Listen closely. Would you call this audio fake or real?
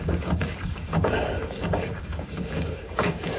fake